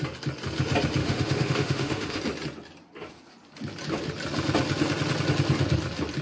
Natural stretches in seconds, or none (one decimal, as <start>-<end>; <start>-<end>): 0.0-1.0; 2.2-6.2